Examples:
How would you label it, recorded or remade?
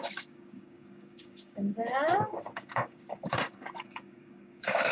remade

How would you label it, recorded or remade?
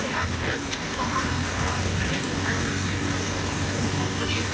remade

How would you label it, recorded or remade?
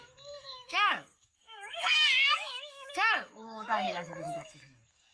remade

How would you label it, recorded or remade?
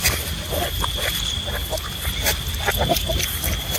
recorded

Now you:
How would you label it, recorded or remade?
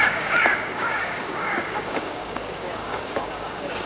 remade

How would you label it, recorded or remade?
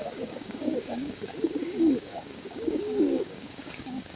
remade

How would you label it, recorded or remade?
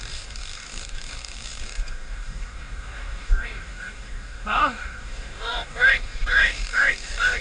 remade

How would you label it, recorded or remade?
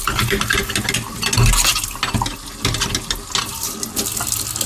recorded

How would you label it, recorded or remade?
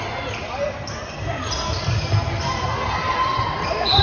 recorded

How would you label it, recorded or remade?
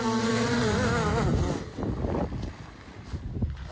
recorded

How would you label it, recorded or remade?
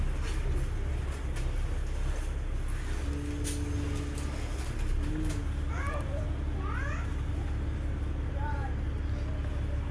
recorded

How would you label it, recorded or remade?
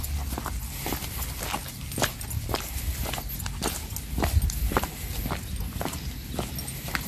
recorded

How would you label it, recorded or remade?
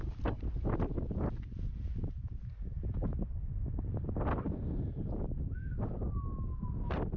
recorded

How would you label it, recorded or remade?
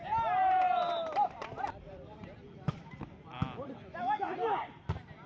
recorded